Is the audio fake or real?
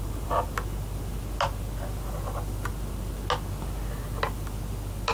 real